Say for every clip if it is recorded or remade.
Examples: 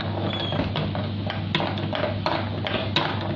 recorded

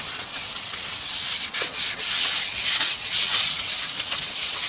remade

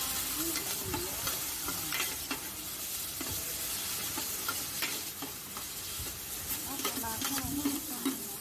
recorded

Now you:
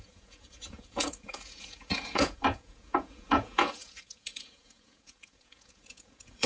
remade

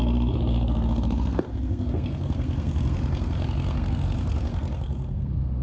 remade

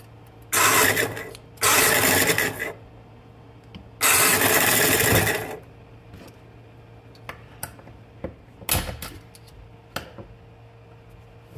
recorded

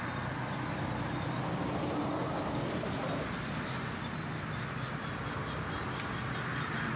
recorded